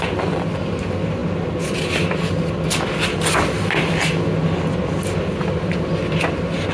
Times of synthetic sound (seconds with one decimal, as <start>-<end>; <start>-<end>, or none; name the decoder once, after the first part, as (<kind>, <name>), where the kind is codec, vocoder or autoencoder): none